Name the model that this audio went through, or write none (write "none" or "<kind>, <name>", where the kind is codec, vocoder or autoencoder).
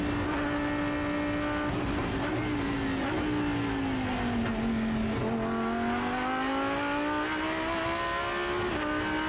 none